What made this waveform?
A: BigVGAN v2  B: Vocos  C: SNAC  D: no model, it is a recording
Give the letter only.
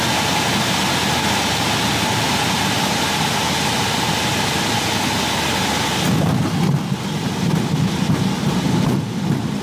D